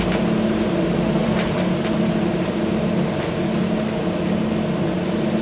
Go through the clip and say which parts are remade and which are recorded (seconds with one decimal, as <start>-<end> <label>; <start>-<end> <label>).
0.0-1.2 recorded; 1.2-2.1 remade; 2.1-5.4 recorded